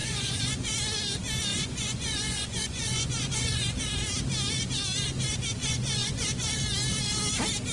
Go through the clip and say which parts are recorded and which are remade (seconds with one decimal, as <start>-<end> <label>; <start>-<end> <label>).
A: 0.0-0.7 remade; 0.7-1.5 recorded; 1.5-3.8 remade; 3.8-5.6 recorded; 5.6-6.6 remade; 6.6-7.7 recorded